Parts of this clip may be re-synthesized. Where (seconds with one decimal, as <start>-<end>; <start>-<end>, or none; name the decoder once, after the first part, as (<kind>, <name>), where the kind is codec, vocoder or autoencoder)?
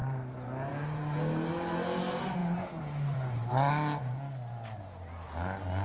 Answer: 0.0-0.7 (vocoder, BigVGAN v2); 2.4-3.7